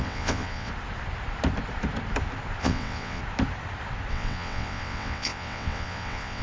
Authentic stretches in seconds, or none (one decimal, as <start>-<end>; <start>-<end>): 0.7-2.6; 3.2-4.1